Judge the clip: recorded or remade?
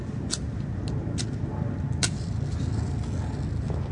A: recorded